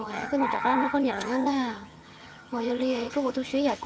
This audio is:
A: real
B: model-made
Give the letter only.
B